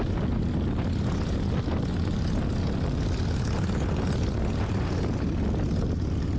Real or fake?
real